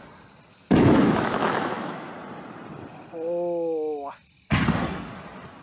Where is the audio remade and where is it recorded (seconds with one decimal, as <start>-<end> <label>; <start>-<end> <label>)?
0.0-0.5 recorded; 0.5-2.1 remade; 2.1-5.6 recorded